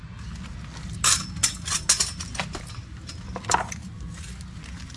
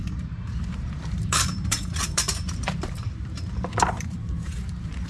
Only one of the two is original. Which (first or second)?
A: first